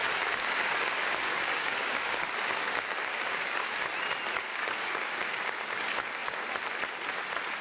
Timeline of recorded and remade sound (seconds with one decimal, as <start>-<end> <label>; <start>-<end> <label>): 0.0-3.8 remade; 3.8-4.5 recorded; 4.5-5.6 remade; 5.6-7.6 recorded